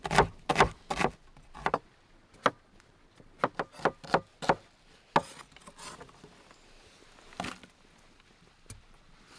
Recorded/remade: recorded